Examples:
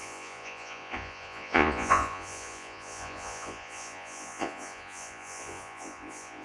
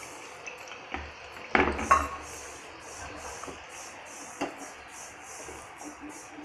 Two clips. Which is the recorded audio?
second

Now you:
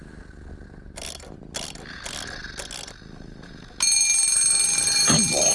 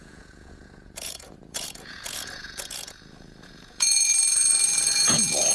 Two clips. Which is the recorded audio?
first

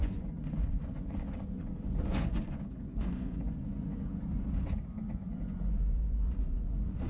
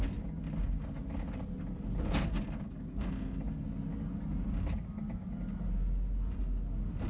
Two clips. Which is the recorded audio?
second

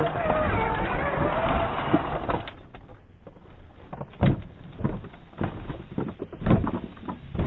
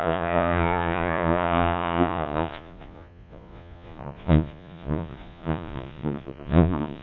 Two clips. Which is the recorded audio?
first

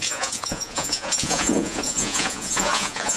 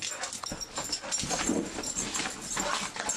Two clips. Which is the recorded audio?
second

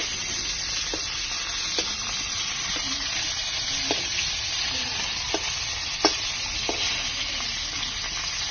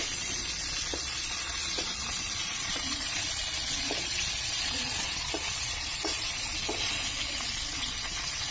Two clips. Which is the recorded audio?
first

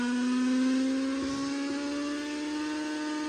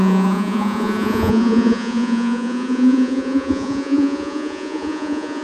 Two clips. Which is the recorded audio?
first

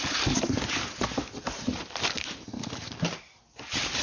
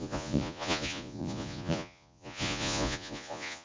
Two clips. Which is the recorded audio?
first